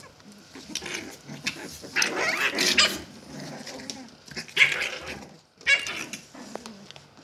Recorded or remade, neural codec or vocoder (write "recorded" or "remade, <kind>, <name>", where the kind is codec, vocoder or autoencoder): recorded